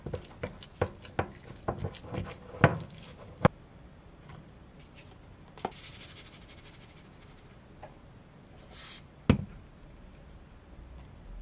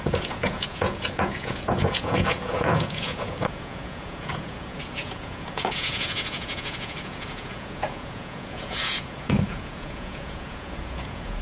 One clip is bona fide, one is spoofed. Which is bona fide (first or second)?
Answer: first